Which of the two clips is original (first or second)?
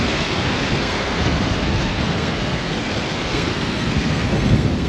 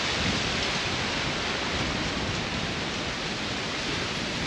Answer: second